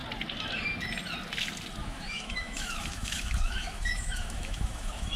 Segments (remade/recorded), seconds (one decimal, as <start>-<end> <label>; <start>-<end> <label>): 0.0-1.8 recorded; 1.8-5.2 remade